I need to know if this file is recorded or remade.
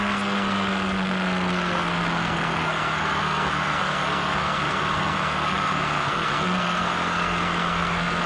remade